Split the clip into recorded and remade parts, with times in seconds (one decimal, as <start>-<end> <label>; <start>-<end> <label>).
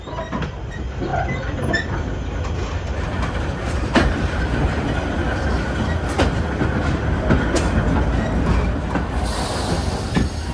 0.0-3.6 recorded; 3.6-4.4 remade; 4.4-10.5 recorded